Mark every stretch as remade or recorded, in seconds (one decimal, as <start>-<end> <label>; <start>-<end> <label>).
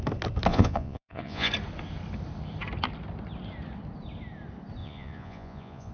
0.0-0.5 recorded; 0.5-1.5 remade; 1.5-4.8 recorded; 4.8-5.9 remade